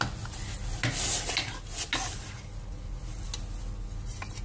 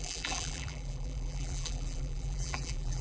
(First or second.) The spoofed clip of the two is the second